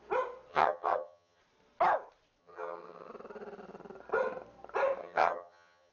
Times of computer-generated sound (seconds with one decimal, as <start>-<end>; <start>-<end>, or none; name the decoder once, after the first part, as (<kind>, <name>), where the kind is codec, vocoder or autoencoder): 0.5-1.4 (vocoder, HiFi-GAN); 2.4-3.1; 5.0-5.9